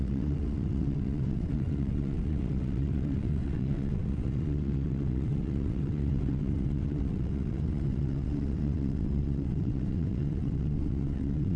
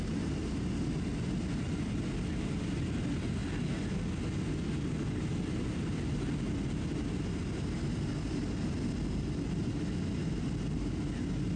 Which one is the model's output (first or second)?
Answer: first